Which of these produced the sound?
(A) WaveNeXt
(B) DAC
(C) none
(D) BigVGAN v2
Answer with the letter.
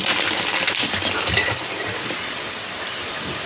D